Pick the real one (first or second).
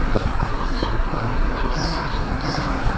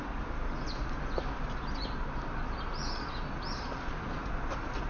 second